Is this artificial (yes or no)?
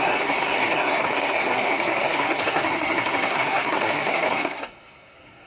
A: yes